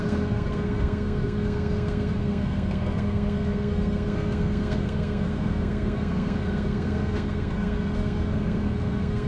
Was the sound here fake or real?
fake